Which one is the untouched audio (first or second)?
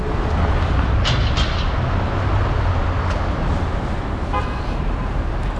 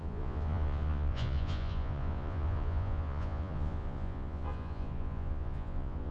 first